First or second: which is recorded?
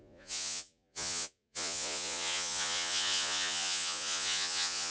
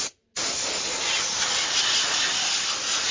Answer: second